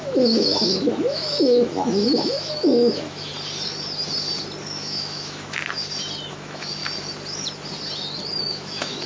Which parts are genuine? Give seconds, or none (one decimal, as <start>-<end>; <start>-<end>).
3.3-4.6; 5.6-6.3; 6.8-8.4